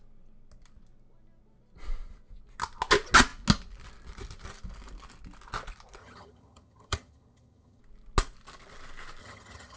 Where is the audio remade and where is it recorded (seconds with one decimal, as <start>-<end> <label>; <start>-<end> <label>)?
0.0-6.0 recorded; 6.0-7.8 remade; 7.8-9.2 recorded; 9.2-9.8 remade